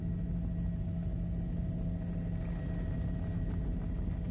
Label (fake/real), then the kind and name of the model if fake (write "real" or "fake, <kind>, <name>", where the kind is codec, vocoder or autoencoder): real